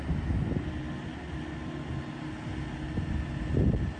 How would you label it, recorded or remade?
recorded